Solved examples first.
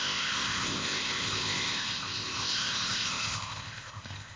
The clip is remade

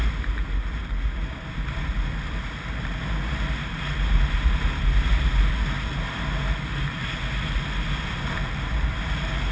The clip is recorded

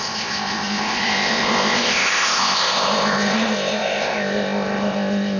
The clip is remade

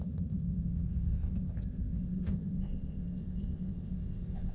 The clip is remade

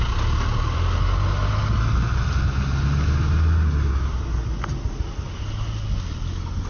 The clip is recorded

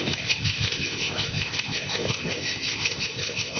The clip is remade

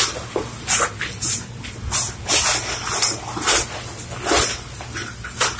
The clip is recorded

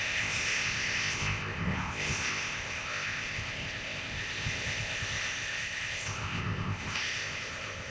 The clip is remade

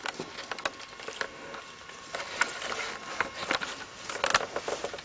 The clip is recorded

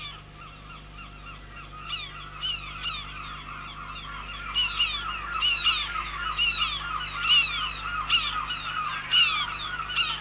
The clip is recorded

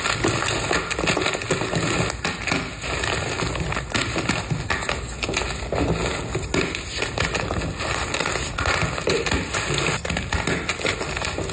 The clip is recorded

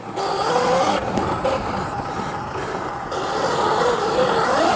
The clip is recorded